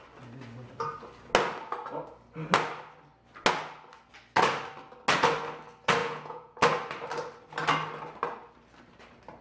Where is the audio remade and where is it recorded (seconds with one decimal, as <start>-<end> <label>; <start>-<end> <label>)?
0.0-6.0 recorded; 6.0-6.6 remade; 6.6-9.4 recorded